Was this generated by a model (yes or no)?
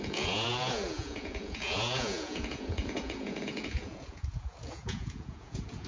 yes